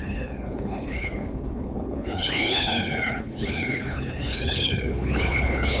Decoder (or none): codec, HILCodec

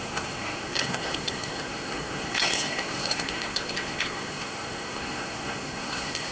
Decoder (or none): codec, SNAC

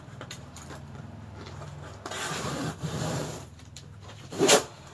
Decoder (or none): vocoder, BigVGAN v2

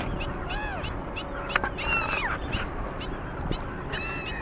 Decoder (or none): none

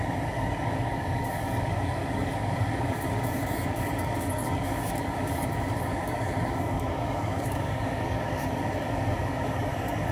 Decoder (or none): codec, DAC